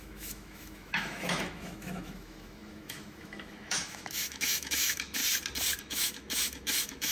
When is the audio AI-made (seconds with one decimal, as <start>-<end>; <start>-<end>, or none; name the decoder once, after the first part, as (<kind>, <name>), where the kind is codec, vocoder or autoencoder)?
0.0-5.2 (autoencoder, DAC-VAE); 5.8-7.1

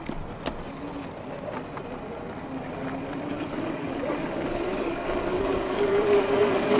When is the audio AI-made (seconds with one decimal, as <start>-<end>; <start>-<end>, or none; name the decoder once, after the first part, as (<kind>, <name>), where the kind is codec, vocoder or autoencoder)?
3.3-6.8 (codec, DAC)

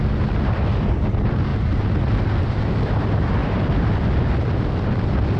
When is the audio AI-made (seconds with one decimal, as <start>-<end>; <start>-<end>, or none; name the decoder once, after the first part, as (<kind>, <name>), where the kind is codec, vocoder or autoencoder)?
none

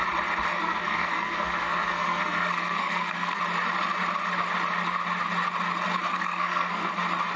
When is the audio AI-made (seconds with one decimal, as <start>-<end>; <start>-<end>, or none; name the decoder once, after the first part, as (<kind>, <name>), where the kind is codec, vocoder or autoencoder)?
0.5-3.4 (codec, SNAC); 6.1-6.9

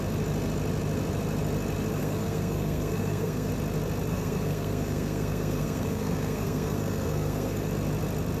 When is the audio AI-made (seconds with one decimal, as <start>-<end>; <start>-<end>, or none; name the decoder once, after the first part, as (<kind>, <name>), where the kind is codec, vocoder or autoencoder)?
2.0-3.5 (codec, SNAC); 4.1-7.7

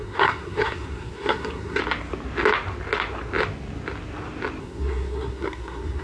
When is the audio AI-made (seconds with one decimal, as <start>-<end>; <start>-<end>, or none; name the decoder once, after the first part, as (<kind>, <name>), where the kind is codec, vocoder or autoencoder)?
0.0-1.8 (codec, SNAC); 4.6-6.0